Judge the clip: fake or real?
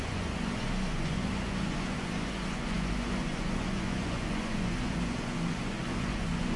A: fake